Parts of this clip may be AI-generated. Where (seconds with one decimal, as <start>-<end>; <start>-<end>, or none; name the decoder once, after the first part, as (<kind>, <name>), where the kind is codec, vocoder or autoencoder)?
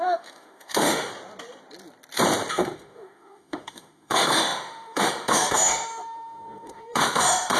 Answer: 0.0-1.1 (autoencoder, DAC-VAE); 2.5-7.6